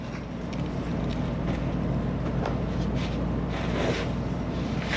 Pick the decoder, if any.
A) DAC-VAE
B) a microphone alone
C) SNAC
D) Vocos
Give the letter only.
B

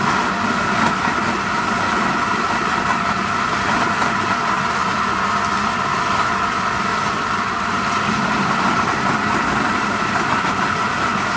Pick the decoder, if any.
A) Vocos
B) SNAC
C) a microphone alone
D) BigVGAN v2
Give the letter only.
C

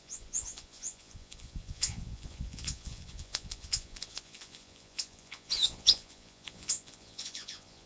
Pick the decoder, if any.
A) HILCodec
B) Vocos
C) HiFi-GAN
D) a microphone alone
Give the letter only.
B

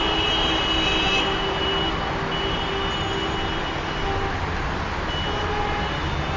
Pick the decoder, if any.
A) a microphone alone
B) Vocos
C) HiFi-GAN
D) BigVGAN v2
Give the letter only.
A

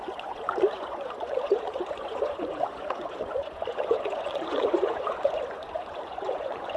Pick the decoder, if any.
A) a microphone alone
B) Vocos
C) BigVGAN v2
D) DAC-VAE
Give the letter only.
B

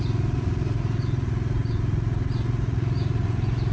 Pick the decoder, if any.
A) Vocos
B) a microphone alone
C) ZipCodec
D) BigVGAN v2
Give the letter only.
A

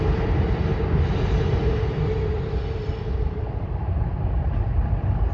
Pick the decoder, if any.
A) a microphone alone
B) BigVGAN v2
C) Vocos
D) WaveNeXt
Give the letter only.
A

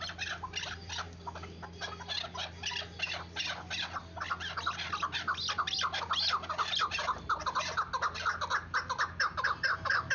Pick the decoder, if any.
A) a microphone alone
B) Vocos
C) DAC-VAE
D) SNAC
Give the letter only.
A